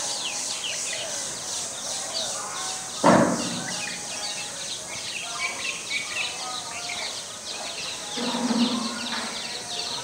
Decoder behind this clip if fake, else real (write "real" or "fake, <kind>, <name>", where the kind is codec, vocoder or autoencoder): real